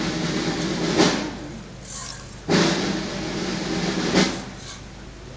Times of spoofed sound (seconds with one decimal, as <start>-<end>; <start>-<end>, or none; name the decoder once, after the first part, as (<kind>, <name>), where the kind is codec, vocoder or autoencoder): none